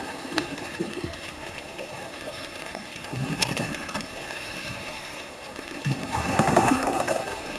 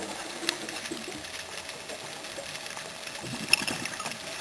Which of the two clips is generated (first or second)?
first